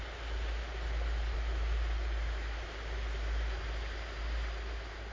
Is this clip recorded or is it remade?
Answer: recorded